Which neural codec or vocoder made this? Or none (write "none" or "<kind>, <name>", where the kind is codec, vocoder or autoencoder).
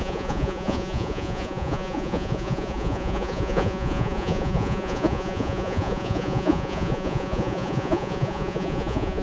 vocoder, Vocos